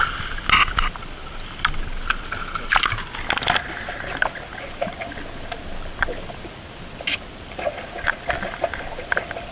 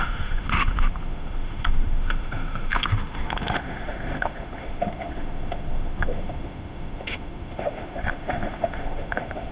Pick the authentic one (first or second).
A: first